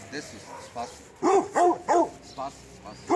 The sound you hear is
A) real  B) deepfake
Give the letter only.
A